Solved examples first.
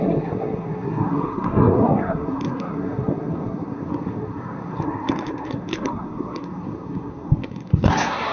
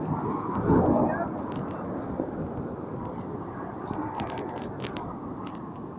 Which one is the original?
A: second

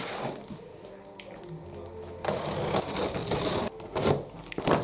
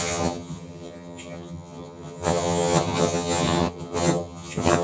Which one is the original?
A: first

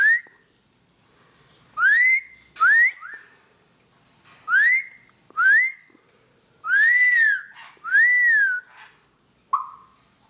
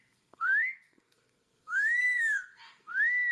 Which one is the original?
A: first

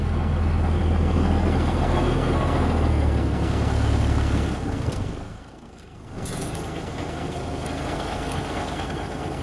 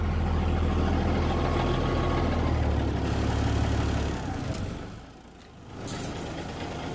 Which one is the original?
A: second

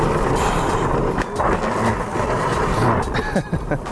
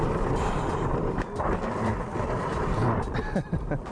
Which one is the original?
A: first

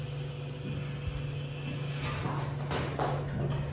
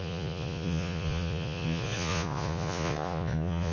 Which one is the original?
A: first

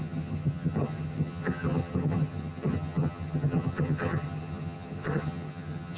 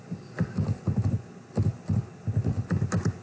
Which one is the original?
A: second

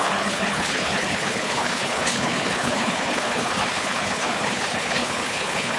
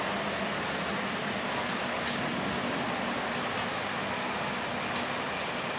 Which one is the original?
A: second